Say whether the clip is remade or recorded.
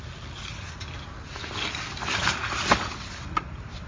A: recorded